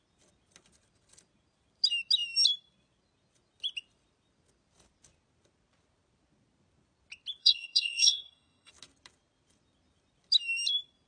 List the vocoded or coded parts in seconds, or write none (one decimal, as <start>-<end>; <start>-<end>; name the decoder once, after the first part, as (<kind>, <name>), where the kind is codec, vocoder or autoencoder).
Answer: 7.4-8.7 (codec, SNAC)